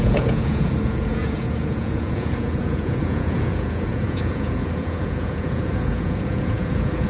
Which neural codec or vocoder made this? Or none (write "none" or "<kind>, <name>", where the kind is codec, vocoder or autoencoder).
vocoder, Vocos